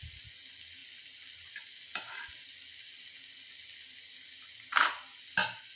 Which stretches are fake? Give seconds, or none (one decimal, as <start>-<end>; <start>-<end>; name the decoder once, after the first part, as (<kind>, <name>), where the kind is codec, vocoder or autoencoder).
none